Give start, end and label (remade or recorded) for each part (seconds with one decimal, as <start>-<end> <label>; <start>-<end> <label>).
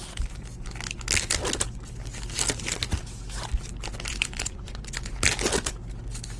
0.0-4.1 recorded; 4.1-5.1 remade; 5.1-6.4 recorded